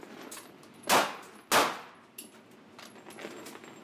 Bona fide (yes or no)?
yes